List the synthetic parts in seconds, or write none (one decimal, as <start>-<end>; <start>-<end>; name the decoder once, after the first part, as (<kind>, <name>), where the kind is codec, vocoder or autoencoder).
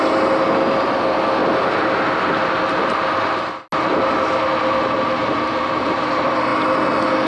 5.2-5.7 (vocoder, BigVGAN v2)